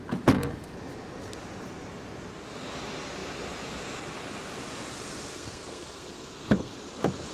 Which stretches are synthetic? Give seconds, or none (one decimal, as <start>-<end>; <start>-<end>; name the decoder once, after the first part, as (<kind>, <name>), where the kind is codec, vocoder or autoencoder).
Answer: 5.3-6.7 (codec, SNAC)